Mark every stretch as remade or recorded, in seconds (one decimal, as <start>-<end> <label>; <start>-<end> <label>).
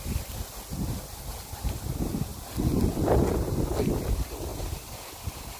0.0-5.6 recorded